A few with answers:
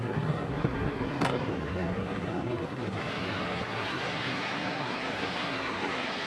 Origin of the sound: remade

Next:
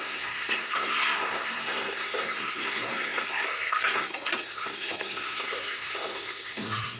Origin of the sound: remade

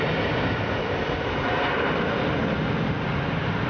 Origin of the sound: recorded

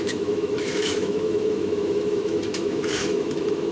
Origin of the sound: remade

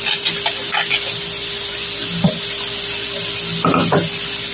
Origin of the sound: recorded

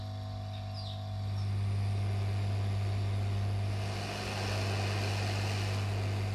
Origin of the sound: recorded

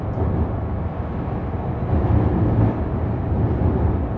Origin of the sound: recorded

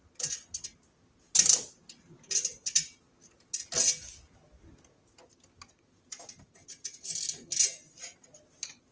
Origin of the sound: recorded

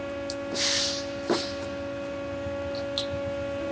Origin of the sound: recorded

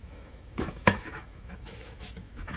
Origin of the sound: remade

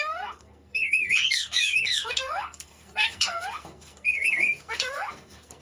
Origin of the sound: remade